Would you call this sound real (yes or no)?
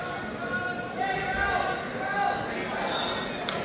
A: yes